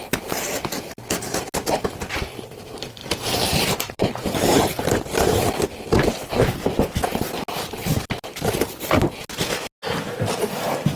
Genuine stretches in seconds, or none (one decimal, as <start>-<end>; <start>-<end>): 0.0-3.0; 4.8-7.8; 9.0-11.0